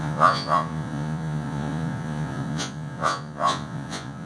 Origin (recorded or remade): remade